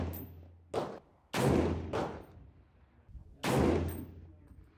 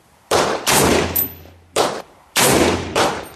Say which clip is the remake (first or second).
second